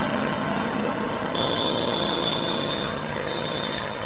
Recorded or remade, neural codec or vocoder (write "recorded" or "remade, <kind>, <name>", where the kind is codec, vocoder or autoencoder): remade, vocoder, HiFi-GAN